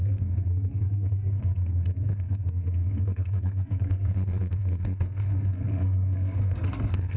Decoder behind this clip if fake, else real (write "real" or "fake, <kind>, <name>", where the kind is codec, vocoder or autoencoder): fake, codec, SNAC